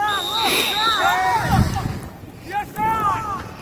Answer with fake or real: real